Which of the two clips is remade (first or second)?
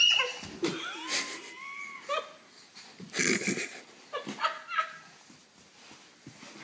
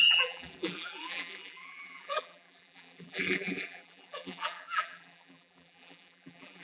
second